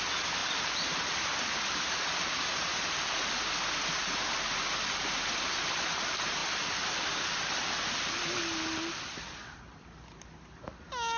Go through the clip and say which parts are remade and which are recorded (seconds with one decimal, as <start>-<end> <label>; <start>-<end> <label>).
0.0-4.0 recorded; 4.0-5.2 remade; 5.2-11.2 recorded